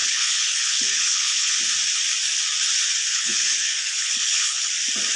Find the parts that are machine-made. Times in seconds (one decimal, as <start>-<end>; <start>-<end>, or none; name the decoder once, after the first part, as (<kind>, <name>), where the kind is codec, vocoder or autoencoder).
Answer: 0.0-1.6 (codec, HILCodec); 3.1-4.7